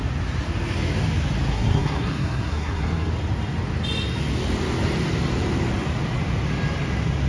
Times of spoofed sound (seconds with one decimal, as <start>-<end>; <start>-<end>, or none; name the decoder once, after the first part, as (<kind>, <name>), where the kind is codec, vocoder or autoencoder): 1.5-3.1 (codec, SNAC)